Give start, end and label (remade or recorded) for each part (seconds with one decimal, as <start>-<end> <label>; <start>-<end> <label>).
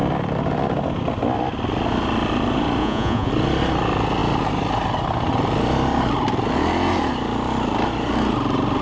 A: 0.0-2.8 recorded; 2.8-3.3 remade; 3.3-8.8 recorded